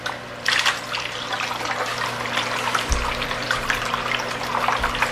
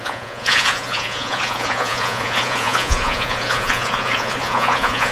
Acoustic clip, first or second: first